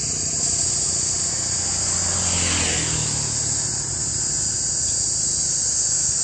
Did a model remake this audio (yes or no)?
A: no